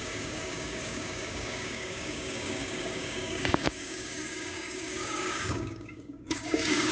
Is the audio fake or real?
fake